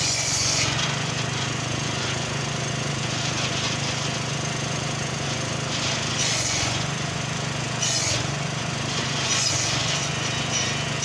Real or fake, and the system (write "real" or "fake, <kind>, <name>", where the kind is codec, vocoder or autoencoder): fake, vocoder, Vocos